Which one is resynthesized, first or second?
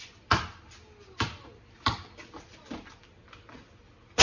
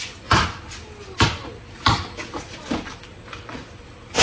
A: second